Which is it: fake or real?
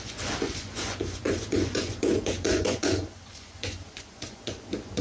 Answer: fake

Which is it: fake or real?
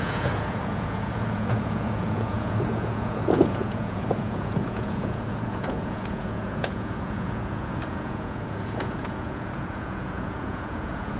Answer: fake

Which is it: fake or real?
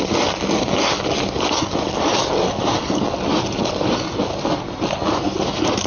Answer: real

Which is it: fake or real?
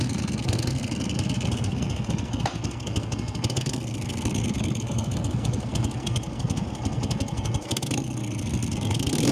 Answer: fake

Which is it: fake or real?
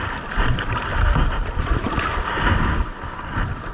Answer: real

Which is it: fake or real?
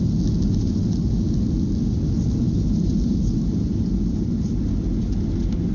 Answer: real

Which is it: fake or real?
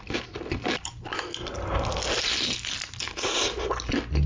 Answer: real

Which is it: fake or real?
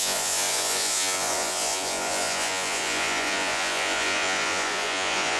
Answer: fake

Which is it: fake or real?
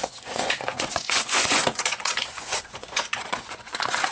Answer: fake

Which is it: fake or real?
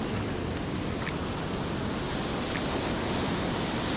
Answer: real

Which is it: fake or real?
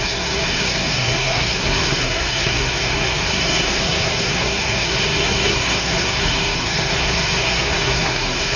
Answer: fake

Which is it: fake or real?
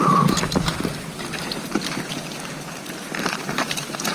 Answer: fake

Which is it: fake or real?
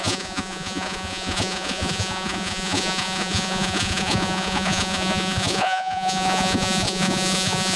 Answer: fake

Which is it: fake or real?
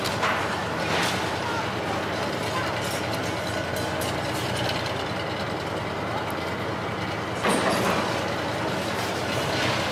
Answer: real